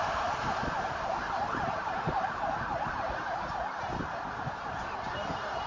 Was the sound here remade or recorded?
recorded